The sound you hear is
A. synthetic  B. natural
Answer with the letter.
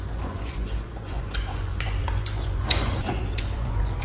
A